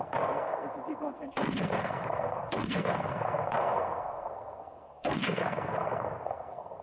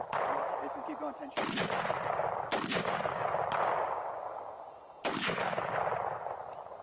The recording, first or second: second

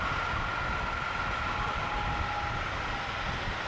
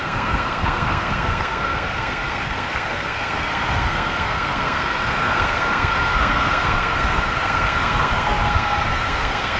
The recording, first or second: first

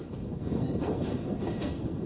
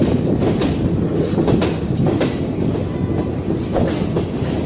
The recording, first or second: second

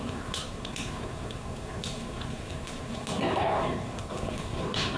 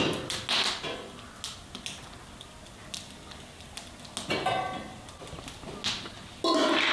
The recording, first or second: second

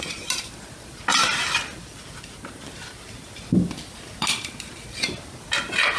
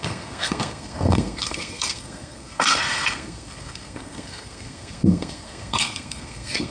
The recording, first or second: first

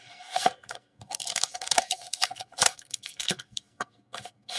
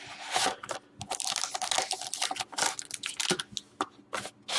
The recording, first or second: second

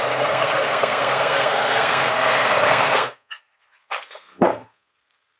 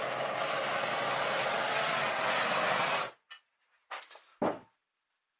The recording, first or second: second